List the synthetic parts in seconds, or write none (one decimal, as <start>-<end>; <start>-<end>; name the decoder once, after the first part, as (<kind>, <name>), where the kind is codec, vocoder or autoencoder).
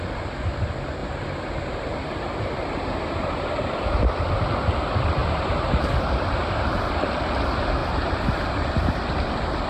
1.0-4.0 (vocoder, BigVGAN v2); 5.2-6.8; 7.8-8.7